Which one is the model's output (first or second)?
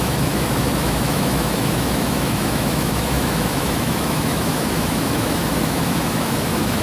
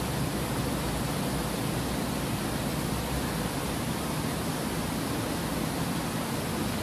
first